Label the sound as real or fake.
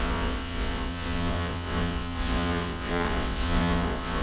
fake